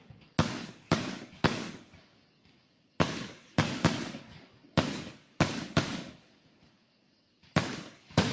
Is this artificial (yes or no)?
yes